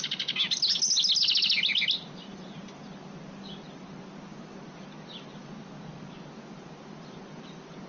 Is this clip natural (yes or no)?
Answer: yes